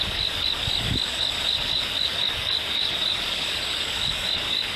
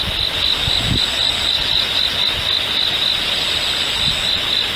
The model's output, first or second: first